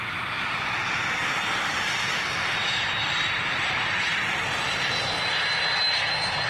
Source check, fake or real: real